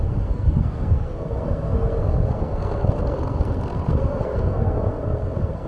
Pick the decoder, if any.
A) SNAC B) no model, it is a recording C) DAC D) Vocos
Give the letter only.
A